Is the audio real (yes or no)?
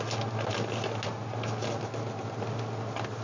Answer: yes